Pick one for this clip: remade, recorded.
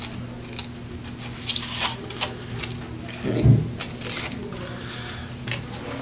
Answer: recorded